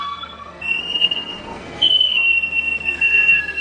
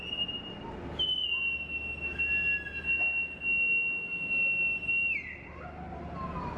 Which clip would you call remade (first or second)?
first